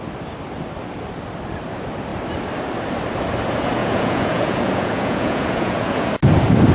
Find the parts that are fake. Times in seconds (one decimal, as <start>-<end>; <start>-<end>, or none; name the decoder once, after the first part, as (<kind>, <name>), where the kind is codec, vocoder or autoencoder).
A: 3.8-6.1 (vocoder, Vocos)

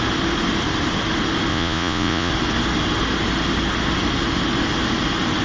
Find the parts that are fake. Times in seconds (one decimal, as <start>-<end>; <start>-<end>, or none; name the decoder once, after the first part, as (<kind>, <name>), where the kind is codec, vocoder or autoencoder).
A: 1.5-2.3 (vocoder, Vocos)

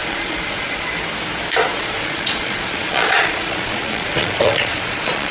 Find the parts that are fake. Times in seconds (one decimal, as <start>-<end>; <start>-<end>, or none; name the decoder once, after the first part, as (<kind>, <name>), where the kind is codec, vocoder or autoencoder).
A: 0.0-0.9 (vocoder, Vocos); 1.7-5.3

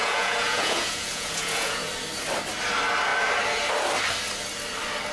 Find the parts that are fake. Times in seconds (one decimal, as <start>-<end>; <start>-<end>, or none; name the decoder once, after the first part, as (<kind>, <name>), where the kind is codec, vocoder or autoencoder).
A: 0.0-1.9 (vocoder, Vocos)

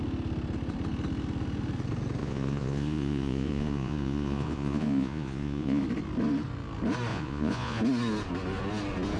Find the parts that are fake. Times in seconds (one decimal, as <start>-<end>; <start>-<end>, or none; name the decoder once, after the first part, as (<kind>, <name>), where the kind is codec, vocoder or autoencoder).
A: 2.2-5.8 (vocoder, Vocos); 7.1-7.8

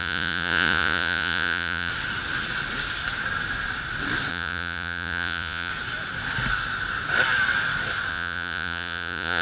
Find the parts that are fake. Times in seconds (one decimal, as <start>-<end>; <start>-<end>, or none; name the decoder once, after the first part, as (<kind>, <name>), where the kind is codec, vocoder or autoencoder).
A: 0.0-1.9 (vocoder, Vocos); 4.3-5.7; 8.1-9.4